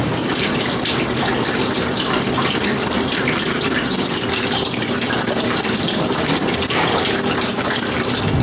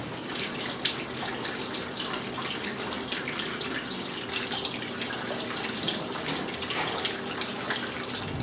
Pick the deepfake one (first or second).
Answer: first